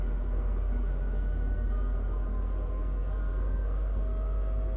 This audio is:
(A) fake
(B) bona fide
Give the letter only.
A